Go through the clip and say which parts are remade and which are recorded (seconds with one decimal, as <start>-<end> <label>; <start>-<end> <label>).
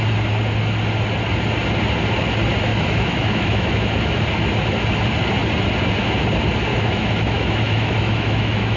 0.0-2.7 recorded; 2.7-4.2 remade; 4.2-6.7 recorded; 6.7-8.8 remade